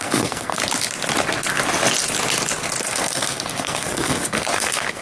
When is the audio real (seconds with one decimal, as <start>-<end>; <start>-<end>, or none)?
0.6-2.8